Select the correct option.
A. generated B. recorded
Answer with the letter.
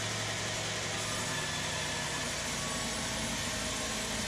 B